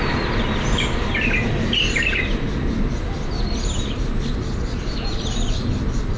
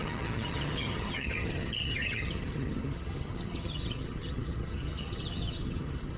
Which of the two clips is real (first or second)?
first